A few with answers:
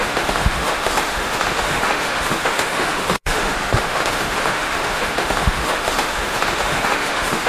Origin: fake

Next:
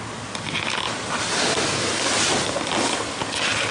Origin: real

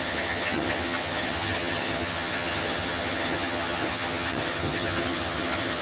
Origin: fake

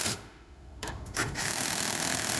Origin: fake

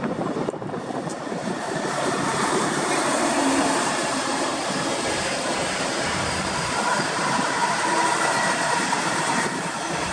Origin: fake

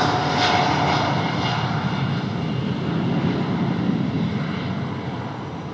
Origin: real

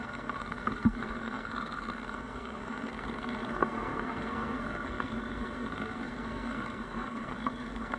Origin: fake